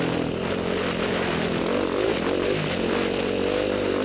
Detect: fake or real real